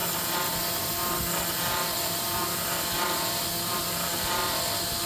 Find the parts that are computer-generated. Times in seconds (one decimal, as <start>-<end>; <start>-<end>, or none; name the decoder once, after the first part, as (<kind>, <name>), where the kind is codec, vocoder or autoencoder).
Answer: none